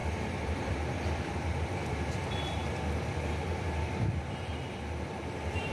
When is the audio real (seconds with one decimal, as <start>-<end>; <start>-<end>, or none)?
2.6-5.0